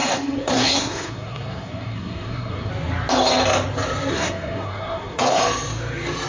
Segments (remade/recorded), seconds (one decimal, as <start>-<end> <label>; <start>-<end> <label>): 0.0-2.7 remade; 2.7-4.1 recorded; 4.1-5.4 remade; 5.4-6.3 recorded